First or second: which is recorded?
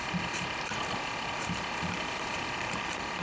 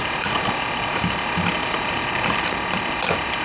second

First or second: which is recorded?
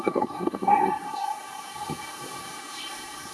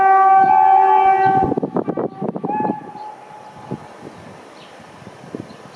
second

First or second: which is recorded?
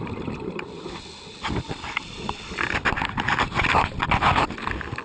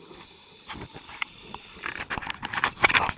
first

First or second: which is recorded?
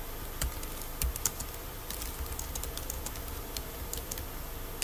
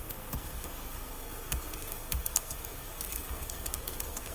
first